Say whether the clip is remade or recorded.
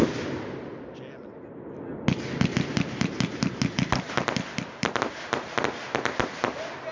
recorded